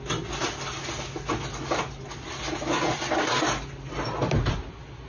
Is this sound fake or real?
real